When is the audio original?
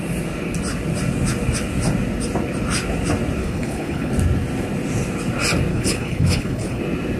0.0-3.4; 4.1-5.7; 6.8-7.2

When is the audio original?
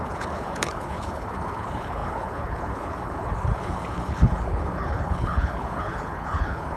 none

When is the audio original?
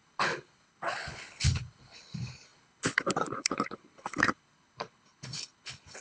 none